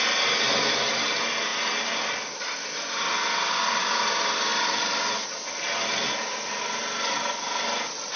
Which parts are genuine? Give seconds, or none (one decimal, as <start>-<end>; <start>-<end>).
0.0-8.2